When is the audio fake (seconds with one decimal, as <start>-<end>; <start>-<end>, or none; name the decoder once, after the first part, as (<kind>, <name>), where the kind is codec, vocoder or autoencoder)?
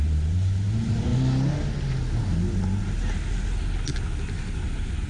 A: none